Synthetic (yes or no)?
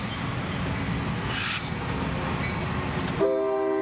no